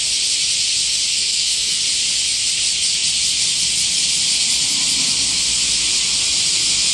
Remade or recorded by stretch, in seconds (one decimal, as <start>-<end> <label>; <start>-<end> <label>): 0.0-1.1 recorded; 1.1-1.8 remade; 1.8-6.9 recorded